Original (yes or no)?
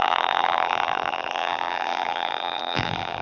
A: no